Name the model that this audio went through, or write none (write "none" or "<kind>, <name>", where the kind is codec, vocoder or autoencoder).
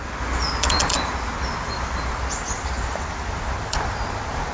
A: none